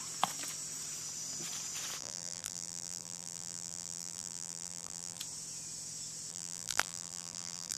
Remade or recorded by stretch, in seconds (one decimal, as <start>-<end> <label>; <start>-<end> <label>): 0.0-2.0 recorded; 2.0-5.2 remade; 5.2-6.3 recorded; 6.3-7.8 remade